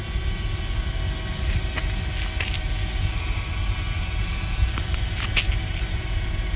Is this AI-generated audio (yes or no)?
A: no